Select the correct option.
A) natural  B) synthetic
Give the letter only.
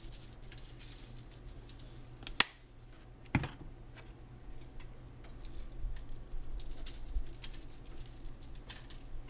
A